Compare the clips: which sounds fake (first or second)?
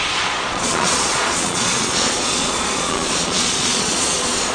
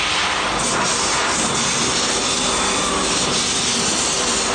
first